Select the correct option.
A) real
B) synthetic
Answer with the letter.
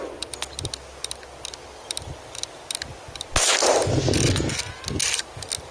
A